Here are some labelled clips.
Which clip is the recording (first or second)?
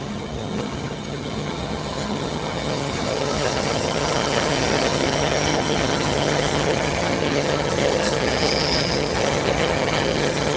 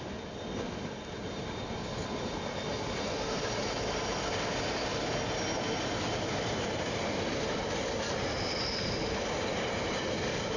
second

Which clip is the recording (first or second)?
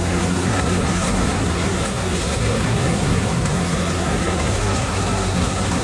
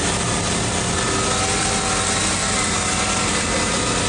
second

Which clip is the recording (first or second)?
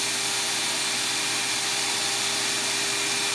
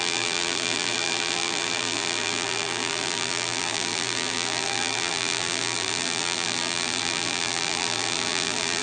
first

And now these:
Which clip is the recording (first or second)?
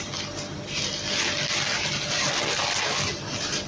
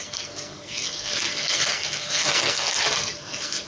first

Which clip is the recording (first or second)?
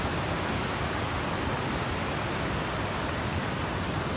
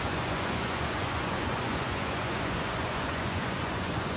first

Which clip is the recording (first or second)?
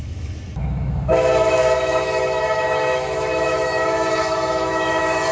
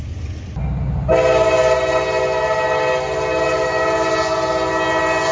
second